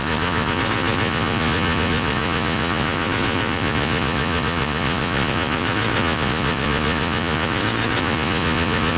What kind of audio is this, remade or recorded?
remade